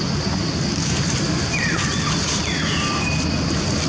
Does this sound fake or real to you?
real